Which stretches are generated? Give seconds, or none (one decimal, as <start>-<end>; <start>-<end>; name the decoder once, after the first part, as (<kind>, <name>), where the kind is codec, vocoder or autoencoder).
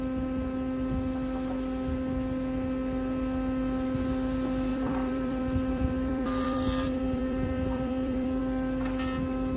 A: 4.7-8.4 (vocoder, BigVGAN v2)